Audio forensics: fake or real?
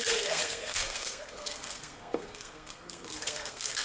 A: fake